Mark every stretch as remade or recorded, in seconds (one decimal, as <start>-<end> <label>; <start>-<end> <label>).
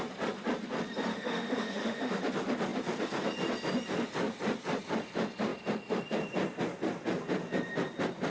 0.0-1.1 recorded; 1.1-2.2 remade; 2.2-8.3 recorded